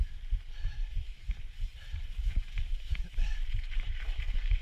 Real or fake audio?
fake